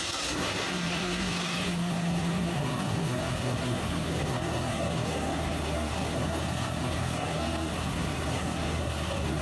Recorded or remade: remade